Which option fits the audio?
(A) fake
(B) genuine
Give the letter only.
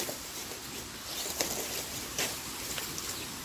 B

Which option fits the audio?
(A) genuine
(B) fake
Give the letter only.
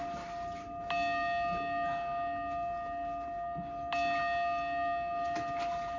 A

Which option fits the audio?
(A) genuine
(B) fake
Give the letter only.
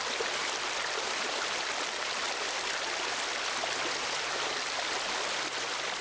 A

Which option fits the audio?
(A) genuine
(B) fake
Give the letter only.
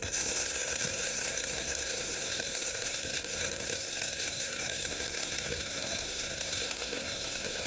B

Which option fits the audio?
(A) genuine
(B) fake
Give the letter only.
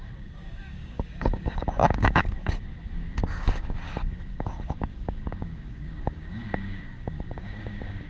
B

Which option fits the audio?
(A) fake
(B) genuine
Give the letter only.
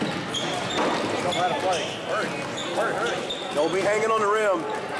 B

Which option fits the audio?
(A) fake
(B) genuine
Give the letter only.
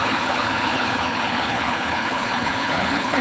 A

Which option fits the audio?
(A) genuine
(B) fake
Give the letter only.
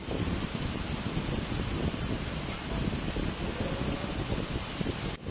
A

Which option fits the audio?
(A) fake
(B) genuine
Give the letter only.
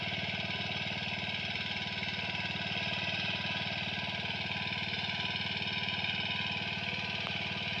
B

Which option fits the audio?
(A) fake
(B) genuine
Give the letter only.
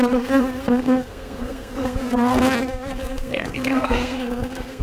A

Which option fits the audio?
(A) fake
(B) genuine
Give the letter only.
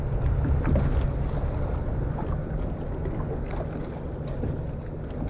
B